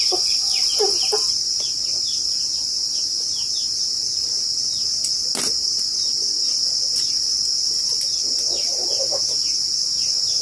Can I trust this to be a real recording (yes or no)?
yes